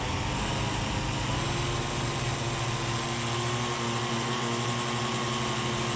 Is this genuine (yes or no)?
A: yes